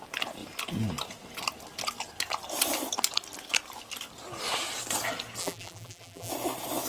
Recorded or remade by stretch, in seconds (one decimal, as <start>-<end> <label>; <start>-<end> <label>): 0.0-5.4 recorded; 5.4-6.3 remade; 6.3-6.9 recorded